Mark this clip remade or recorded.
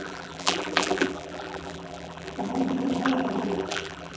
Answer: remade